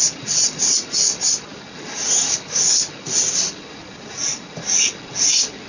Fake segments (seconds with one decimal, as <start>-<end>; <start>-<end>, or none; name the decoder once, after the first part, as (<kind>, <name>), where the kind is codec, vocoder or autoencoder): none